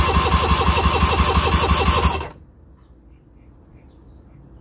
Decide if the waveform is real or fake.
real